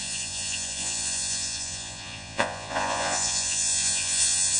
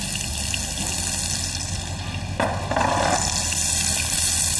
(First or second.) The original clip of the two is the second